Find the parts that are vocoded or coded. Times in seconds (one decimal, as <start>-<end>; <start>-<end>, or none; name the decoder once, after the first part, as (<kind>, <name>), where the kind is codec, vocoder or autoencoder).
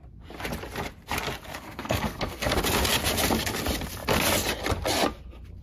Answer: 1.5-2.6 (codec, SNAC)